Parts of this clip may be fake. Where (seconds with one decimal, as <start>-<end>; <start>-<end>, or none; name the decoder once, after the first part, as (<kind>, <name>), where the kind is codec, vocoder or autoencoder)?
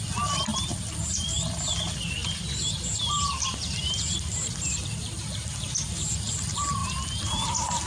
0.0-6.8 (vocoder, BigVGAN v2)